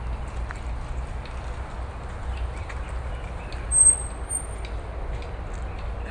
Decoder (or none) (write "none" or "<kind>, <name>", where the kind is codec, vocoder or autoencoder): none